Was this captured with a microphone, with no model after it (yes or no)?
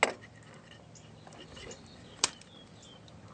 yes